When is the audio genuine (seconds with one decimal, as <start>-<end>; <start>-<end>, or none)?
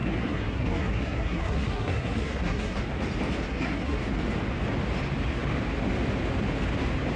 2.8-3.5; 4.0-7.2